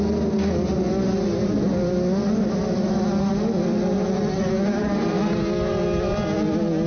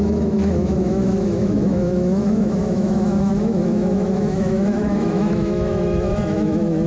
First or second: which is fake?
second